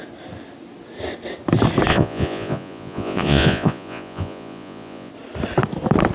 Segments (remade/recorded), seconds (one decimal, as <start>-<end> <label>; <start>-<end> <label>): 0.0-1.9 recorded; 1.9-5.1 remade; 5.1-6.1 recorded